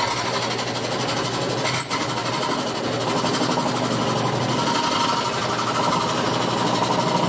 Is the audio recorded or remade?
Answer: recorded